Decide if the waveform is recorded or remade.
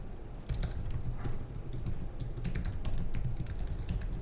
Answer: recorded